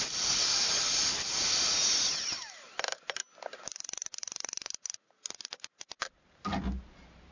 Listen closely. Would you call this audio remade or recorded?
recorded